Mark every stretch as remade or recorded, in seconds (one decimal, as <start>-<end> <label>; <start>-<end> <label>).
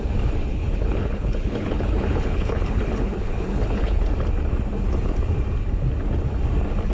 0.0-0.5 recorded; 0.5-4.1 remade; 4.1-6.9 recorded